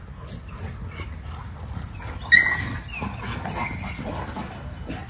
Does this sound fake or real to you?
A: real